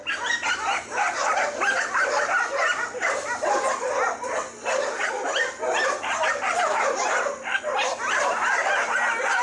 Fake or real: real